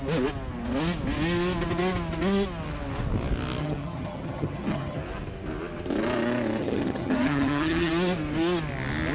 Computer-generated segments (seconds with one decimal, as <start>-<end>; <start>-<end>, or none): 3.6-5.0; 6.6-7.9